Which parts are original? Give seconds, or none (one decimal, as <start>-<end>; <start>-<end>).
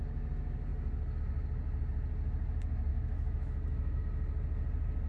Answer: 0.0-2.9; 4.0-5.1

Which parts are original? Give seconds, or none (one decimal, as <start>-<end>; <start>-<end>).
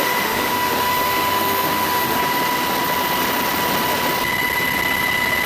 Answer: 2.2-5.5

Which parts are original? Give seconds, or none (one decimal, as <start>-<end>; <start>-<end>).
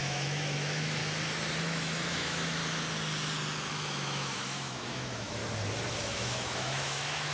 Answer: 1.0-1.6; 2.6-3.7; 5.4-5.9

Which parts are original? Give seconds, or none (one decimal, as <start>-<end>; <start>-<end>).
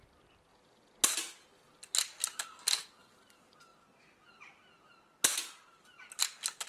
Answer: 0.0-6.7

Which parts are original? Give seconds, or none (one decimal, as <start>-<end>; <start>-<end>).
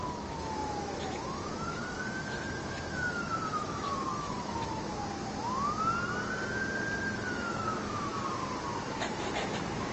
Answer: 4.9-7.0; 8.1-8.9